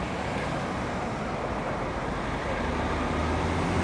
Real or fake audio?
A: real